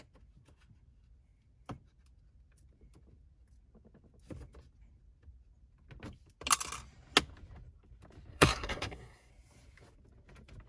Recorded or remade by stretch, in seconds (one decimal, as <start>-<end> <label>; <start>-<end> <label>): 0.0-8.3 recorded; 8.3-9.3 remade; 9.3-10.7 recorded